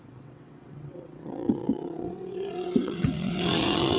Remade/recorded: remade